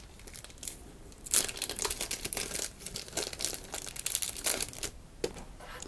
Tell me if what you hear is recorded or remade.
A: recorded